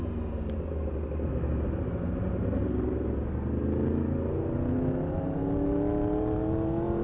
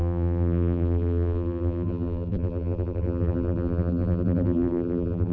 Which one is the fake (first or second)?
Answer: second